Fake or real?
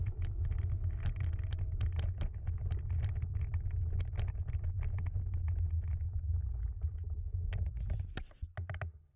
real